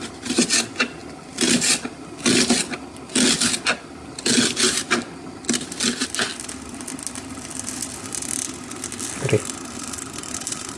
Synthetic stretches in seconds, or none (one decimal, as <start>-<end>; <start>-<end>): none